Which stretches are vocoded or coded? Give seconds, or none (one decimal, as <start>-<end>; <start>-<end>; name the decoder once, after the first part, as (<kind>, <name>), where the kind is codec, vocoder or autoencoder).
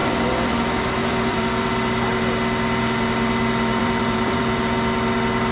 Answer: 0.0-0.5 (vocoder, BigVGAN v2); 1.0-2.0; 3.7-4.6